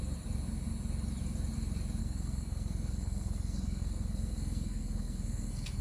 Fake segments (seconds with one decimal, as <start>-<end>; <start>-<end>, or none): 2.0-5.8